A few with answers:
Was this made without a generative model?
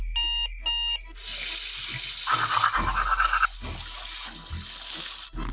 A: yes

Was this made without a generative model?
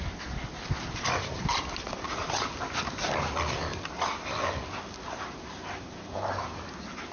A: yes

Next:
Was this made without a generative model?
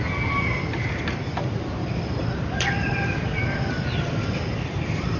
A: yes